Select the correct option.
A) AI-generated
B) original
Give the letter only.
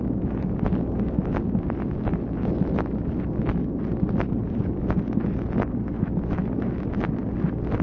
B